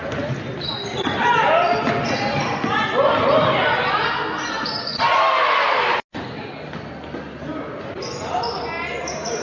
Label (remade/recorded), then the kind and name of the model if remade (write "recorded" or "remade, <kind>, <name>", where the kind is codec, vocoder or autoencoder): recorded